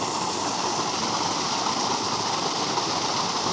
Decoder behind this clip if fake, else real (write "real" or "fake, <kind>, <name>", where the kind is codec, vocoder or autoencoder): real